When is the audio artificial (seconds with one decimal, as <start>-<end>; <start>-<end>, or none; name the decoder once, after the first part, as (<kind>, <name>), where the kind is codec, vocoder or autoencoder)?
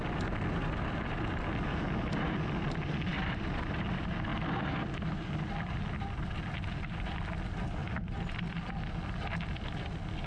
3.1-3.8 (vocoder, BigVGAN v2); 4.3-6.4; 7.8-8.5